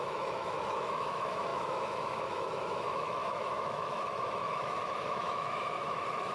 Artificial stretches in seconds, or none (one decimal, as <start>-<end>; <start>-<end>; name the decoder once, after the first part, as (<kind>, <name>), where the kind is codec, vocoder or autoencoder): 0.0-6.3 (autoencoder, DAC-VAE)